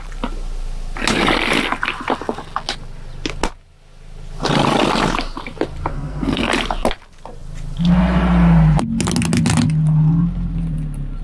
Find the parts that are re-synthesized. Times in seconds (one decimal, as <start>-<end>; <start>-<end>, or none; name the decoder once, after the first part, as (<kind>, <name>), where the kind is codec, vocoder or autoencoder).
5.9-6.5 (codec, SNAC)